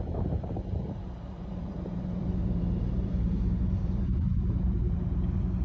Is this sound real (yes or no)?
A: no